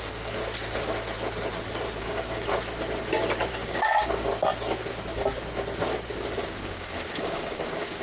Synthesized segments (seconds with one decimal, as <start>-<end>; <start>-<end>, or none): 0.0-0.4; 2.0-2.5; 3.5-4.3; 6.4-8.0

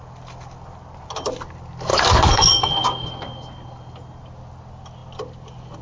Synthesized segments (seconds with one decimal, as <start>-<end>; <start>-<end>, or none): 1.9-2.7

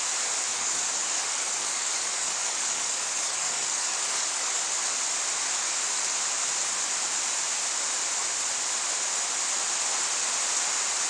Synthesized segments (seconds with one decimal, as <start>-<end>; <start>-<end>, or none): 0.5-4.6

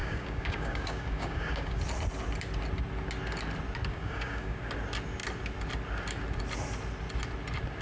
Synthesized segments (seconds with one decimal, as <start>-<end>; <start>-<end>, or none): 0.0-1.8; 3.9-4.6

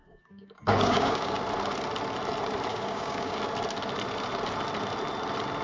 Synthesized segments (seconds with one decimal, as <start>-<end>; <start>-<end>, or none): 0.0-1.4; 2.7-3.4